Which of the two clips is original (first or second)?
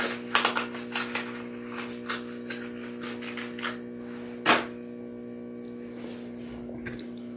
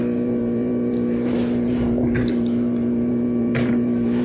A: first